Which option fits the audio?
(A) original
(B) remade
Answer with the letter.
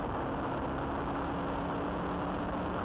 A